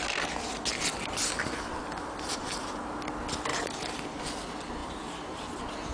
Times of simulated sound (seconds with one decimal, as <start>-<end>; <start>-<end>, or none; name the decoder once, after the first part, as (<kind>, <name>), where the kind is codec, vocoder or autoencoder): 0.7-2.6 (vocoder, BigVGAN v2); 3.5-4.2; 4.8-5.4